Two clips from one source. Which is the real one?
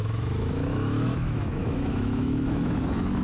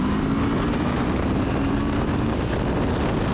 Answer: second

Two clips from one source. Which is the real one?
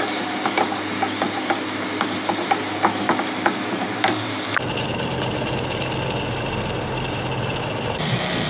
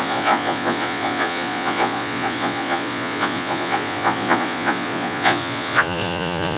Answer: first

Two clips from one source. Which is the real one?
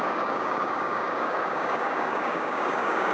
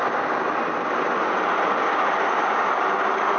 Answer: second